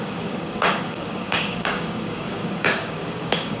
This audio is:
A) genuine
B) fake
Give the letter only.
B